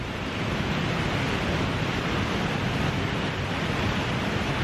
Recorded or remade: recorded